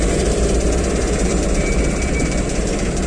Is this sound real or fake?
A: fake